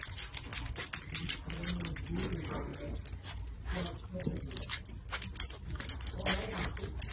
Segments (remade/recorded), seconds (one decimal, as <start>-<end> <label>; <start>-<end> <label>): 0.0-7.1 recorded